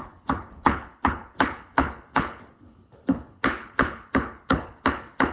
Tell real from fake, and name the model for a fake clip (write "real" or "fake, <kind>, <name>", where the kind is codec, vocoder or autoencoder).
fake, codec, HILCodec